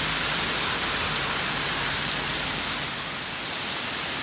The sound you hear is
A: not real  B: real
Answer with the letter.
B